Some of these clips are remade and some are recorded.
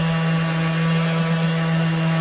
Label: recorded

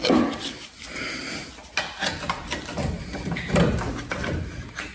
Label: recorded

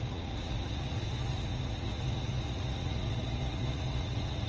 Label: remade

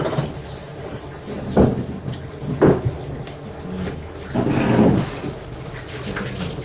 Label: recorded